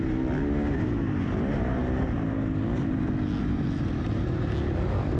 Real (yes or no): yes